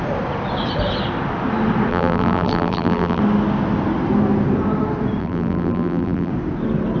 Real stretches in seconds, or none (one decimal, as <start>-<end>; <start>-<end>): 0.0-1.9; 3.2-5.2; 6.3-7.0

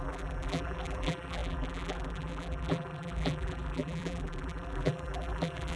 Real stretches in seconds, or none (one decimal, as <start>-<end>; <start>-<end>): none

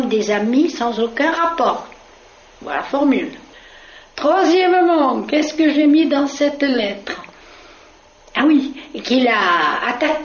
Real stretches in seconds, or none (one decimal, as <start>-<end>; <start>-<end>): none

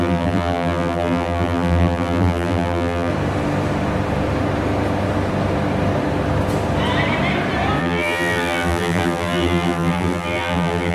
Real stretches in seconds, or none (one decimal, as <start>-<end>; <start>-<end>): 3.1-7.8

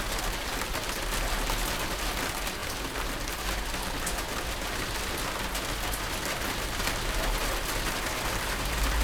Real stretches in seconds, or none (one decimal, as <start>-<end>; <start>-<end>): 0.0-9.0